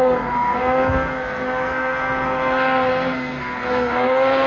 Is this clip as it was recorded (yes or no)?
no